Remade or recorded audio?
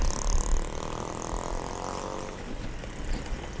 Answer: recorded